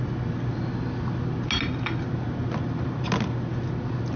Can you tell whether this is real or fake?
real